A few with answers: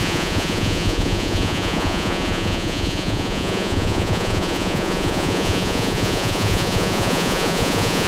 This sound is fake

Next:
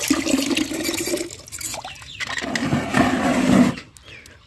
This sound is real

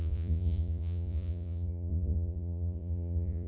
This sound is fake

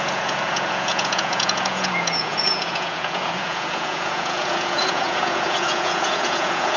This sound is fake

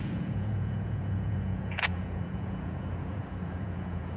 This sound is fake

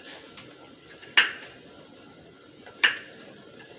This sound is real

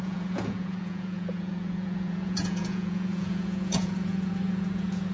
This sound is fake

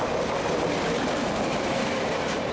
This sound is real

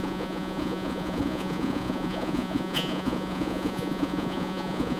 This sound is fake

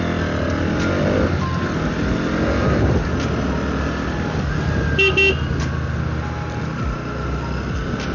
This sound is real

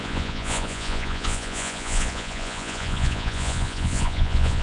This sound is fake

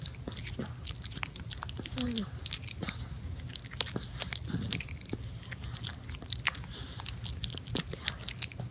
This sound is real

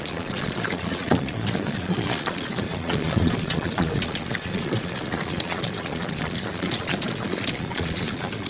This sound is fake